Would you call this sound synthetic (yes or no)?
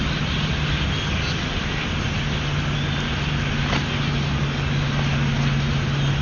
no